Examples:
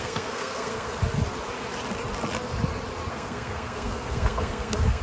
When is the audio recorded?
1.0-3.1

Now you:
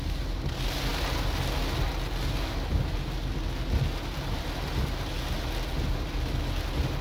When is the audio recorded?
0.0-7.0

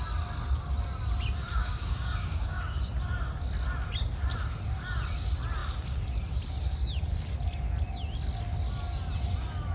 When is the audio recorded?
0.0-1.5; 2.8-9.7

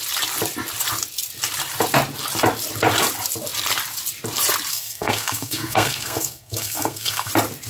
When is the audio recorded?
0.0-4.7; 7.3-7.7